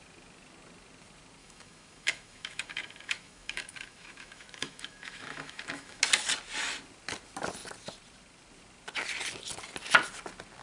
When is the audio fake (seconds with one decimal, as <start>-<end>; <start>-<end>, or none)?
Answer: 1.4-6.0